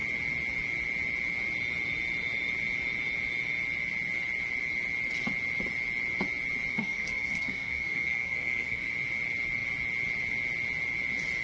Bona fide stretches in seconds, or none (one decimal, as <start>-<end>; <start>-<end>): 0.0-6.7; 8.9-11.4